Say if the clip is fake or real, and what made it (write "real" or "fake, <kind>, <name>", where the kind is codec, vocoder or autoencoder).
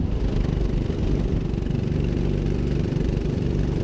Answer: fake, vocoder, BigVGAN v2